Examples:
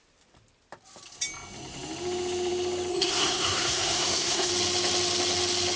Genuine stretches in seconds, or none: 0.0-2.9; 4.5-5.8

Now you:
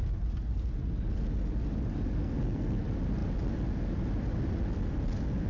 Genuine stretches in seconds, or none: 0.0-2.2; 2.8-5.5

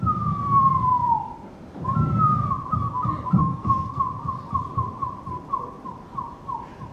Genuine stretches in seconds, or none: 0.0-3.4; 4.0-6.9